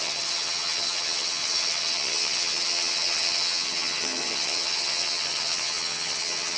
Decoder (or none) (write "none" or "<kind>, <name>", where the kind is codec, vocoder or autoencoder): vocoder, HiFi-GAN